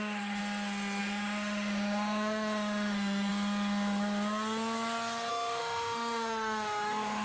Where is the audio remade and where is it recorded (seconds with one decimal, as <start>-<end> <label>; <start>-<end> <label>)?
0.0-0.4 remade; 0.4-1.0 recorded; 1.0-3.3 remade; 3.3-5.3 recorded; 5.3-7.2 remade